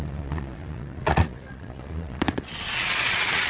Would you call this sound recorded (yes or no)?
no